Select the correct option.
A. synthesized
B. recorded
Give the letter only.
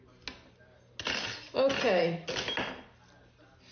B